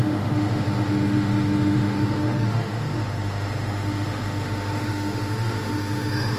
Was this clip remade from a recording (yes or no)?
yes